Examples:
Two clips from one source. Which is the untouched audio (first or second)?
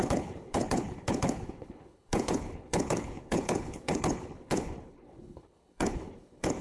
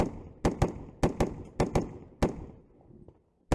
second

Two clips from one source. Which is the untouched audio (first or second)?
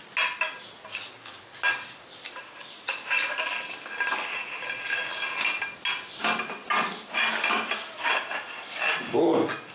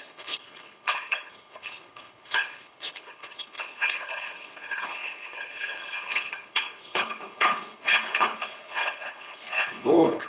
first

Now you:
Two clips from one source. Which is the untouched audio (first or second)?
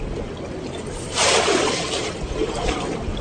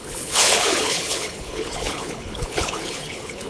first